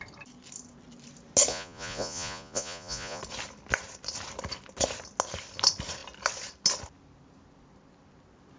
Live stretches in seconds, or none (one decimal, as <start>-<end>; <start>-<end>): 0.0-1.5; 3.2-8.6